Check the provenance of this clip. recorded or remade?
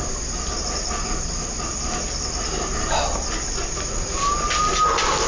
recorded